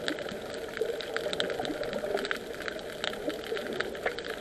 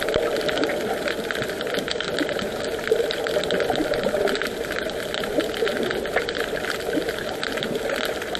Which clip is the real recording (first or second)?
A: first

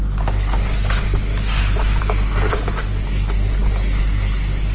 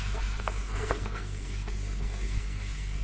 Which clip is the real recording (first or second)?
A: first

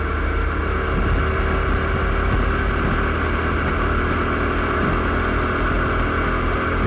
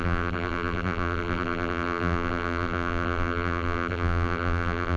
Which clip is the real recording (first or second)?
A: first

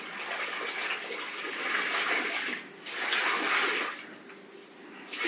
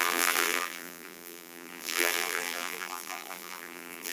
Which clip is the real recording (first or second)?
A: first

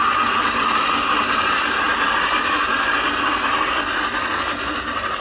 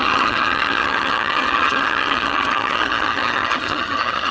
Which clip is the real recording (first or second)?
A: first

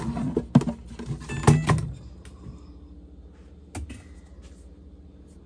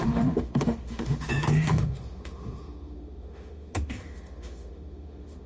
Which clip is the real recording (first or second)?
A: first